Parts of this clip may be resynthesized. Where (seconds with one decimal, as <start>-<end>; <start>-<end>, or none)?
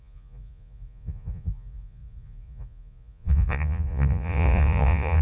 0.0-5.2